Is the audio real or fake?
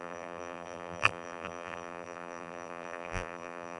fake